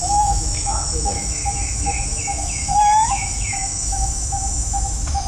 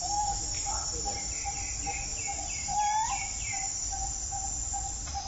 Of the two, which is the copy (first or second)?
first